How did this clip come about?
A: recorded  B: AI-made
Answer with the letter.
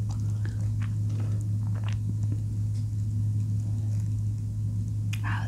A